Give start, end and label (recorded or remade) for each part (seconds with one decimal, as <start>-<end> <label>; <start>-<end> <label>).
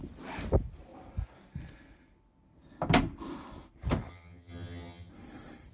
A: 0.0-4.1 recorded; 4.1-5.1 remade; 5.1-5.7 recorded